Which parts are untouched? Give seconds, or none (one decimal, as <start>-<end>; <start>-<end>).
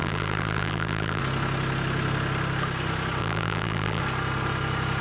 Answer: 1.2-3.2; 4.0-5.0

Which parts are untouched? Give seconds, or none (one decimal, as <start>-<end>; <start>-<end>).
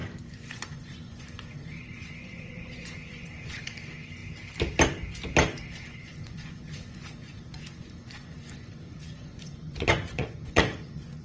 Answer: 4.2-5.7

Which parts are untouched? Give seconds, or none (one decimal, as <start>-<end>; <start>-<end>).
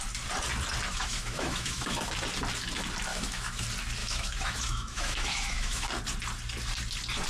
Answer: 0.0-0.9; 2.1-3.1; 3.6-4.0; 5.9-7.3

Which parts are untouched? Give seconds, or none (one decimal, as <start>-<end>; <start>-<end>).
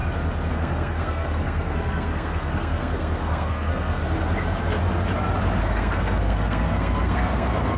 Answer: 0.0-0.5; 4.0-5.6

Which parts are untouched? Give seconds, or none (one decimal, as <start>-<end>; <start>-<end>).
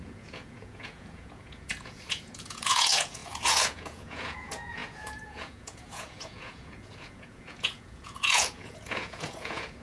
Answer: none